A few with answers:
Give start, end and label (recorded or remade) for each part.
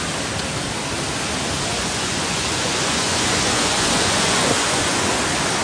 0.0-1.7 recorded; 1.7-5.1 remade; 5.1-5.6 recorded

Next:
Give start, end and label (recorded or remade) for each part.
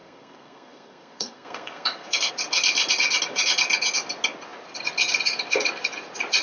0.0-2.3 remade; 2.3-6.4 recorded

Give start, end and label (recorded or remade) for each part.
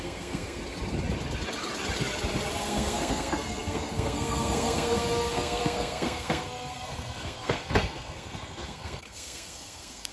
0.0-0.6 remade; 0.6-2.6 recorded; 2.6-10.1 remade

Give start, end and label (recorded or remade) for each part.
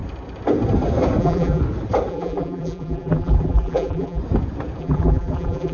0.0-1.2 recorded; 1.2-1.6 remade; 1.6-2.1 recorded; 2.1-4.2 remade; 4.2-4.8 recorded; 4.8-5.7 remade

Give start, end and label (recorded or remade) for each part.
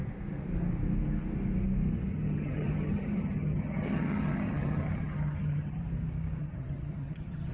0.0-2.1 recorded; 2.1-5.8 remade; 5.8-6.4 recorded; 6.4-7.5 remade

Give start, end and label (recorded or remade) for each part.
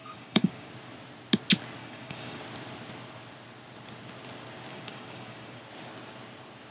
0.0-0.7 remade; 0.7-1.8 recorded; 1.8-2.4 remade; 2.4-4.7 recorded; 4.7-5.6 remade; 5.6-6.7 recorded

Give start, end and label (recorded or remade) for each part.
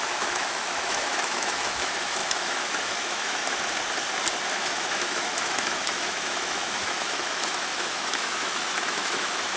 0.0-3.4 remade; 3.4-4.5 recorded; 4.5-9.6 remade